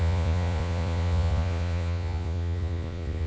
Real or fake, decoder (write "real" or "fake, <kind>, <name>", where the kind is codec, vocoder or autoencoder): fake, vocoder, Vocos